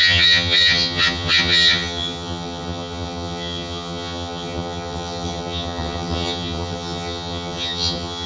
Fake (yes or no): yes